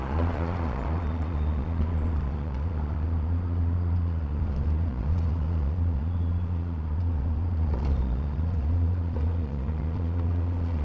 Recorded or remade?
remade